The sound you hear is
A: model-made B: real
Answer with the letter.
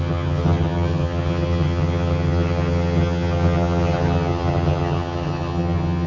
A